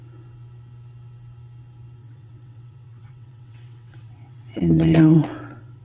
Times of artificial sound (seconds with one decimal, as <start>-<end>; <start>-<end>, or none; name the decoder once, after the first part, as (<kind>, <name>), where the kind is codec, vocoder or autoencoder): 2.0-5.8 (vocoder, WaveNeXt)